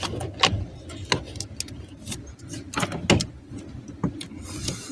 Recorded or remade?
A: recorded